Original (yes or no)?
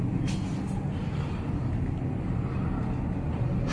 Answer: yes